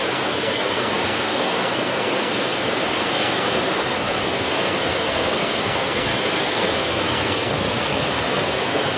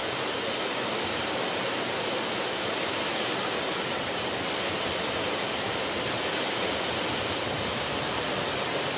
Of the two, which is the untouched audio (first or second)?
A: second